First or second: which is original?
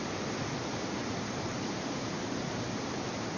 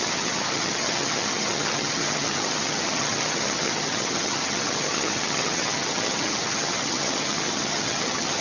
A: first